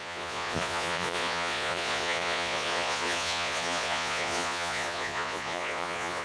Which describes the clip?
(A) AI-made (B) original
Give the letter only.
A